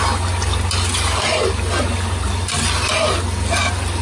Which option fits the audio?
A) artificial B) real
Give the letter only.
B